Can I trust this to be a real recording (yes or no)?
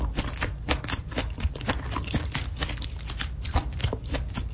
yes